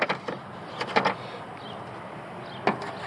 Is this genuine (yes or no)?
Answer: yes